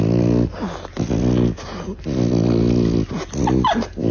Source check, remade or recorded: recorded